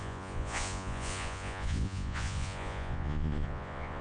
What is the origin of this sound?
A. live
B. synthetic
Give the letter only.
B